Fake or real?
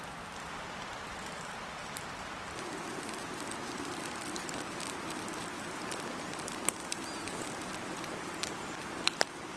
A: real